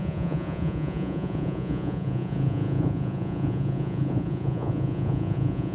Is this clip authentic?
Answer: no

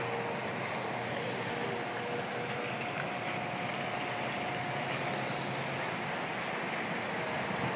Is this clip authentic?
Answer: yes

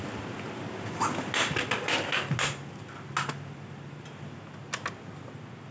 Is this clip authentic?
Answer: yes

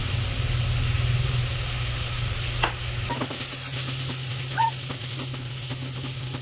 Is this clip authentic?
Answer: yes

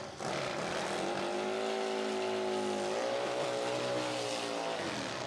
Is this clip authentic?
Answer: yes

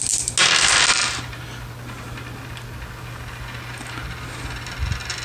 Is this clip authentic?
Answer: yes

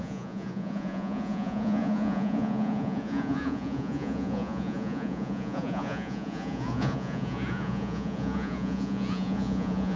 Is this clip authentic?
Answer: no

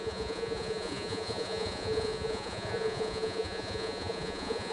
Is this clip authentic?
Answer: no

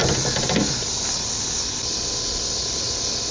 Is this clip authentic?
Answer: yes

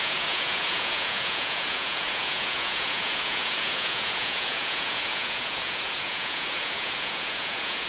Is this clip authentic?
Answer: no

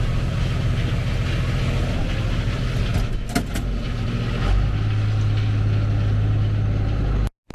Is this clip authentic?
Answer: yes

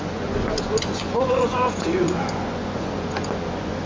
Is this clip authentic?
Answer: no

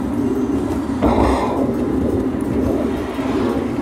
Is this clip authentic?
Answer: yes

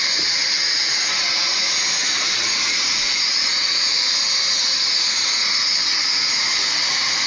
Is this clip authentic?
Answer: no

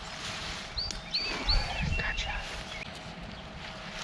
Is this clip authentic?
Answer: yes